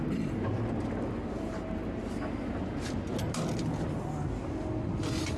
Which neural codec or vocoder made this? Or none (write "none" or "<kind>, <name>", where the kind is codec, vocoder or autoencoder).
none